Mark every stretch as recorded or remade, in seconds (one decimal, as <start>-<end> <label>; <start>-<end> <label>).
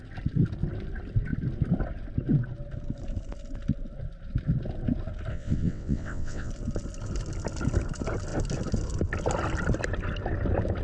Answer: 0.0-5.3 recorded; 5.3-6.5 remade; 6.5-10.8 recorded